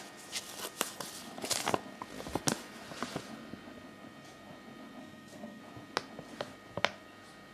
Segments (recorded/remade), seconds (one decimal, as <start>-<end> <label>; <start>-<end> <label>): 0.0-5.0 recorded; 5.0-5.6 remade; 5.6-7.5 recorded